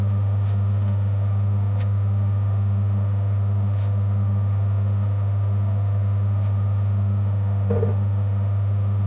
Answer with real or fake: fake